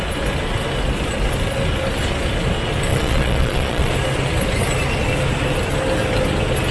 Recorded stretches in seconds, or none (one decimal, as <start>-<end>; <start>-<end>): 0.0-2.9; 3.9-6.7